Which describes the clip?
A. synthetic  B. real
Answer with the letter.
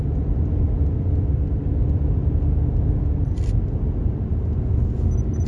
B